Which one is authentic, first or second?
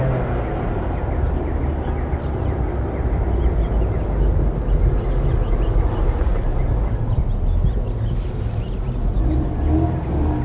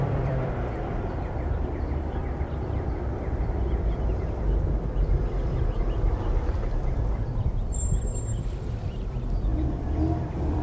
first